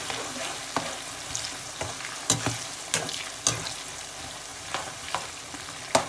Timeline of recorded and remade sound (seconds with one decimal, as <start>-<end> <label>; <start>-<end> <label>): 0.0-4.5 recorded; 4.5-5.1 remade; 5.1-6.1 recorded